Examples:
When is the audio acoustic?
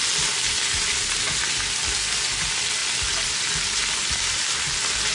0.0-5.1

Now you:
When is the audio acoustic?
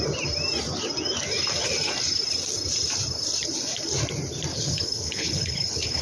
0.0-4.5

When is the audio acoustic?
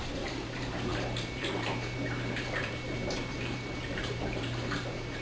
none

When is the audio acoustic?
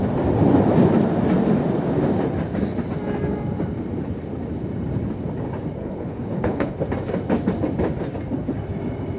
0.0-5.8; 6.8-9.2